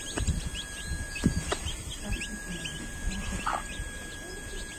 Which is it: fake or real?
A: real